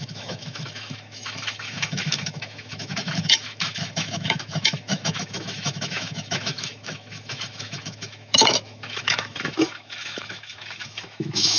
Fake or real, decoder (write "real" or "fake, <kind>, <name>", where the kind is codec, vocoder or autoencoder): fake, autoencoder, DAC-VAE